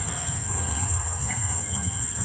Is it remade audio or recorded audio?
remade